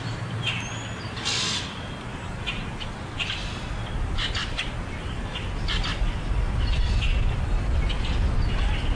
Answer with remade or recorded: recorded